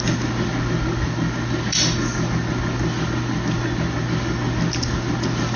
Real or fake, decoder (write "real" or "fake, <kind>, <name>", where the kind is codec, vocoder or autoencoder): real